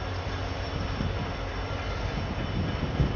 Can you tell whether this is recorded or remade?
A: recorded